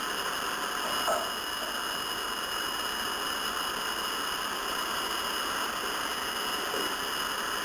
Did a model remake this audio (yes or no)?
no